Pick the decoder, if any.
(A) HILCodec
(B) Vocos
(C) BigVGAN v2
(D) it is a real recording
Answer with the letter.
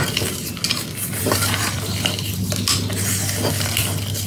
D